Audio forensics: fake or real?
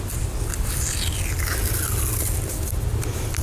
real